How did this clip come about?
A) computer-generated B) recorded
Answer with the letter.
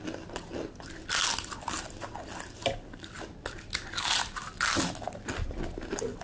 B